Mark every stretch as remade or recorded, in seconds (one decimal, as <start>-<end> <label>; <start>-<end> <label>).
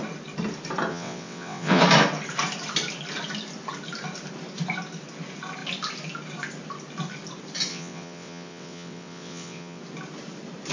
0.0-0.9 recorded; 0.9-1.8 remade; 1.8-7.7 recorded; 7.7-9.8 remade; 9.8-10.7 recorded